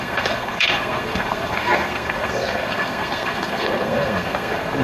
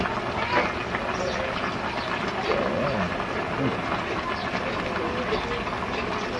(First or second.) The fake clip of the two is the first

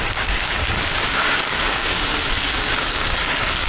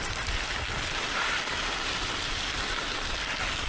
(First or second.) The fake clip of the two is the first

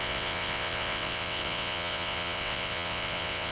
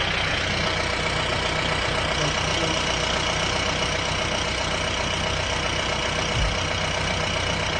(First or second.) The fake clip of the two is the first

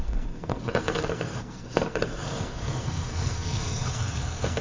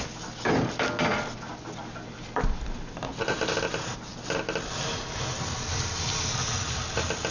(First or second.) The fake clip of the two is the first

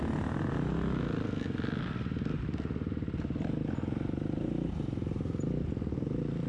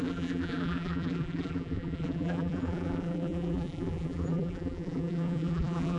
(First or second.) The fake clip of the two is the second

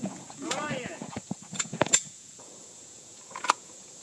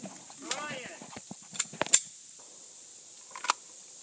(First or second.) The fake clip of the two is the first